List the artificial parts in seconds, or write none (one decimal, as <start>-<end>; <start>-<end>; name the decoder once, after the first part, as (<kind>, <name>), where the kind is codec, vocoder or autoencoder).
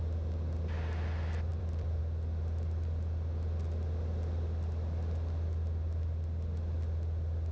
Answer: 1.5-2.0 (vocoder, BigVGAN v2)